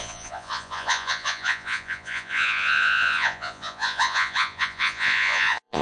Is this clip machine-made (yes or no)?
yes